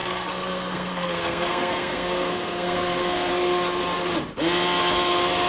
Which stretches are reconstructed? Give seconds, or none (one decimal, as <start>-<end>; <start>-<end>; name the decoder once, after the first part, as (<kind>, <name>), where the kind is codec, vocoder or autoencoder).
0.0-3.3 (codec, SNAC)